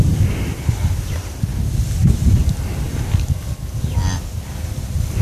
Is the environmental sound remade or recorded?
recorded